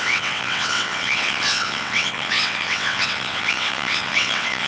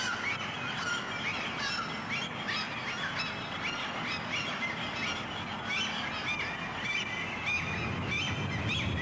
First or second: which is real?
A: second